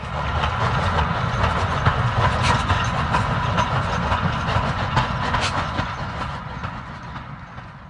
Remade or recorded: remade